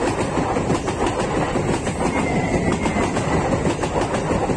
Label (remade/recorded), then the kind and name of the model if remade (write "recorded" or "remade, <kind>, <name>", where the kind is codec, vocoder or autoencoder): recorded